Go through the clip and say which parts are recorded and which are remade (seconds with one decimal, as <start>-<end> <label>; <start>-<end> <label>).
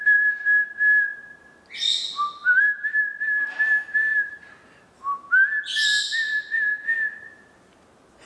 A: 0.0-2.4 recorded; 2.4-3.0 remade; 3.0-4.1 recorded; 4.1-4.6 remade; 4.6-6.1 recorded; 6.1-6.7 remade; 6.7-8.3 recorded